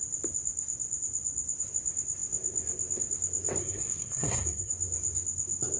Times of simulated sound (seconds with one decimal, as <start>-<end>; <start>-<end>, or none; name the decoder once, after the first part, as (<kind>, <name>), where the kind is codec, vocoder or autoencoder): 3.6-4.7 (codec, SNAC)